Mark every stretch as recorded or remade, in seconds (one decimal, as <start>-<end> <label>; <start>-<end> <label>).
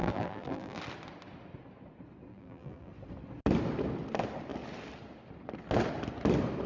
0.0-0.8 remade; 0.8-2.3 recorded; 2.3-2.9 remade; 2.9-6.7 recorded